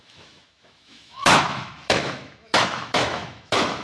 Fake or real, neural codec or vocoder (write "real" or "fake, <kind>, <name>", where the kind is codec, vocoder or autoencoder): fake, autoencoder, DAC-VAE